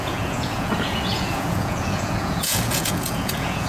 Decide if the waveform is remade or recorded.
remade